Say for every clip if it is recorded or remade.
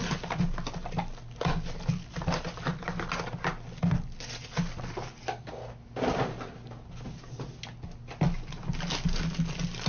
recorded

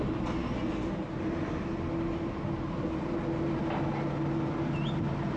recorded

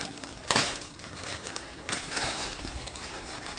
remade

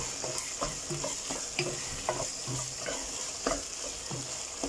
recorded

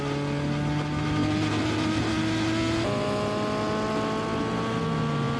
recorded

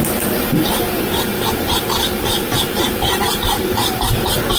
remade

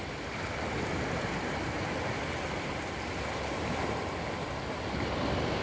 recorded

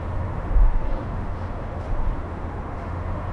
remade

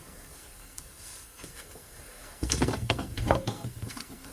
remade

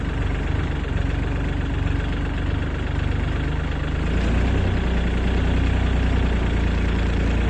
recorded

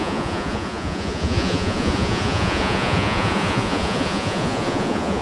remade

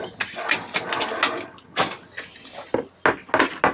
recorded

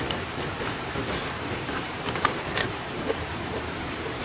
remade